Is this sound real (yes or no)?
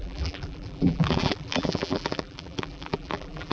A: no